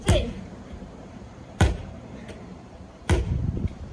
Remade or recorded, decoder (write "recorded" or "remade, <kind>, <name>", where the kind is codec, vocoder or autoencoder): remade, vocoder, BigVGAN v2